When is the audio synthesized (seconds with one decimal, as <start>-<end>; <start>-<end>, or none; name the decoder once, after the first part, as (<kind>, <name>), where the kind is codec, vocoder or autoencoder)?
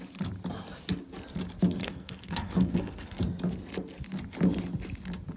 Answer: 1.8-3.2 (codec, SNAC)